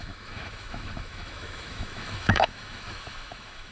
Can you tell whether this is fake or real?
fake